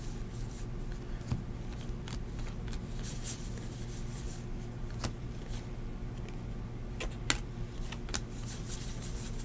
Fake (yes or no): no